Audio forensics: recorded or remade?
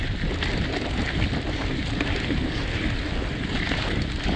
recorded